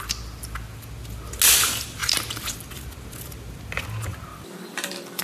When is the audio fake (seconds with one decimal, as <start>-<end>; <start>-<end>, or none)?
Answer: 4.3-5.2